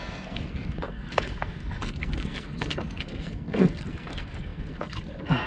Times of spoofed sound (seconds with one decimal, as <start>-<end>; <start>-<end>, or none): 0.0-5.5